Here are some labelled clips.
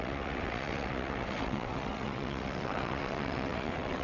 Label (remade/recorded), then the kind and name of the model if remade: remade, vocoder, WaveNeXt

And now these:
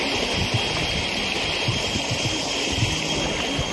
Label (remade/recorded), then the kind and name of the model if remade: recorded